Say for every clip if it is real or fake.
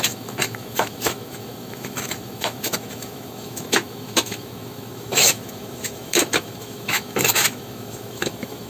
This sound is fake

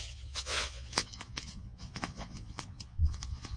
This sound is fake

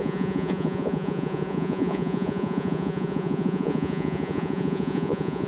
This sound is fake